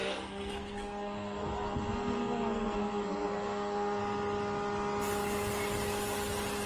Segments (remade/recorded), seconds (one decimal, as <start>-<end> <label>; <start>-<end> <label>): 0.0-4.0 remade; 4.0-6.7 recorded